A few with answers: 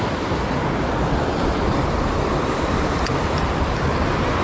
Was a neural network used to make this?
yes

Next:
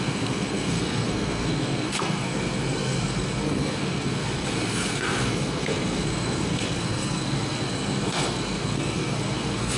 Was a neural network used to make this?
yes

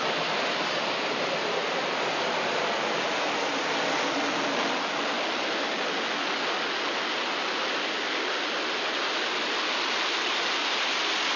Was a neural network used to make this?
no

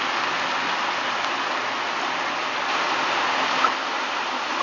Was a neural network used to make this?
no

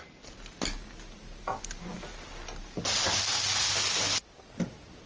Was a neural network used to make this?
no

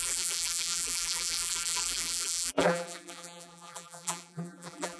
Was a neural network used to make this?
yes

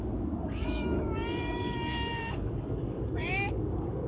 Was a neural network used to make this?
yes